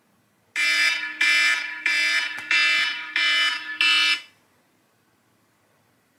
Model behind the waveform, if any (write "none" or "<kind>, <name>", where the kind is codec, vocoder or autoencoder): none